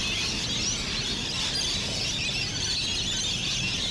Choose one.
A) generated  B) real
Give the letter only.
B